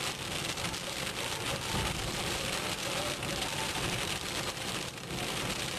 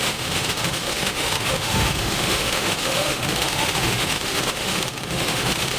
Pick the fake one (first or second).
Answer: second